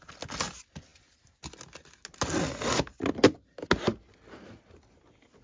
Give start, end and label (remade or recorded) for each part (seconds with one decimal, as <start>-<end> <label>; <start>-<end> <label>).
0.0-5.4 recorded